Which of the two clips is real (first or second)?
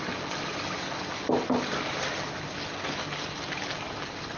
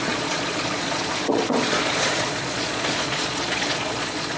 first